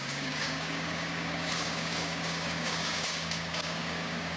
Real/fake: fake